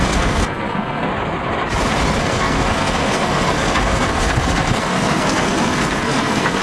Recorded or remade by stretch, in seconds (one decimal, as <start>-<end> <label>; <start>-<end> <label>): 0.0-1.1 remade; 1.1-2.2 recorded; 2.2-6.6 remade